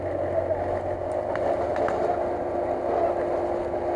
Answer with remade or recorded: recorded